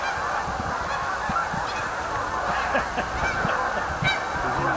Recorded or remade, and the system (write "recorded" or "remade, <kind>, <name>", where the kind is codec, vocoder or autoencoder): recorded